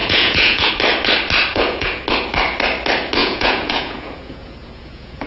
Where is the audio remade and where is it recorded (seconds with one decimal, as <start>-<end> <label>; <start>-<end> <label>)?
0.0-0.7 remade; 0.7-1.5 recorded; 1.5-2.0 remade; 2.0-3.2 recorded; 3.2-5.3 remade